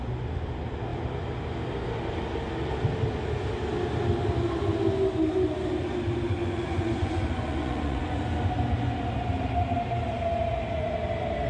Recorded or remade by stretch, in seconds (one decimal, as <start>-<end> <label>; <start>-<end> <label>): 0.0-6.4 recorded; 6.4-8.2 remade; 8.2-11.5 recorded

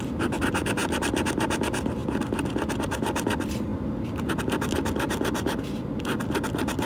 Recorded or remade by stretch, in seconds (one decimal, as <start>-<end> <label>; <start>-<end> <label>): 0.0-6.9 recorded

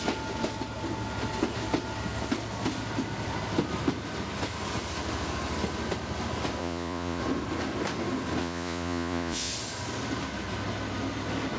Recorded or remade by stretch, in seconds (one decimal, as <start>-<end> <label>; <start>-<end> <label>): 0.0-6.6 recorded; 6.6-7.2 remade; 7.2-8.4 recorded; 8.4-9.5 remade; 9.5-11.6 recorded

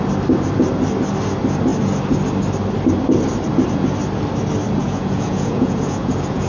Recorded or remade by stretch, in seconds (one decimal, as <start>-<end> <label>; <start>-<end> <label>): 0.0-4.8 recorded; 4.8-6.5 remade

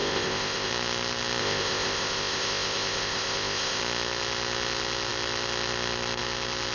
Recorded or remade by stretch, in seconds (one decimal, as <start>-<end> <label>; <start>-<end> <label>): 0.0-0.7 remade; 0.7-1.4 recorded; 1.4-3.8 remade; 3.8-6.7 recorded

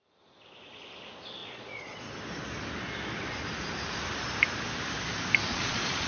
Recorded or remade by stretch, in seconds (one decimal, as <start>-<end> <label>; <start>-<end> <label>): 0.0-1.4 recorded; 1.4-2.1 remade; 2.1-5.5 recorded; 5.5-6.1 remade

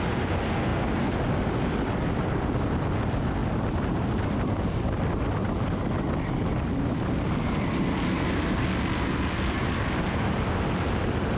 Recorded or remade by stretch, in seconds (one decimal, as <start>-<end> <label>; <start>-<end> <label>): 0.0-11.4 recorded